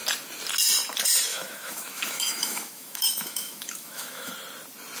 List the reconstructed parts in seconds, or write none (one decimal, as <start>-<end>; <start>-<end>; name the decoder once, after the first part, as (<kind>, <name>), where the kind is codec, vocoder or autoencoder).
1.3-4.3 (autoencoder, DAC-VAE)